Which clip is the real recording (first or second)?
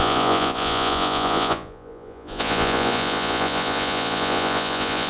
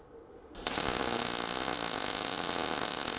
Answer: second